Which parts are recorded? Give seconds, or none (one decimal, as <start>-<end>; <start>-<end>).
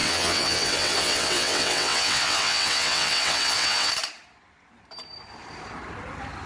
3.9-6.5